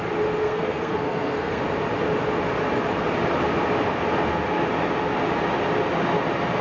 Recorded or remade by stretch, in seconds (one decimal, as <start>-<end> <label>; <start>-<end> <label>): 0.0-0.4 recorded; 0.4-1.6 remade; 1.6-6.6 recorded